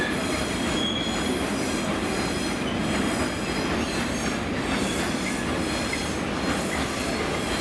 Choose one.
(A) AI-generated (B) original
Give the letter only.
B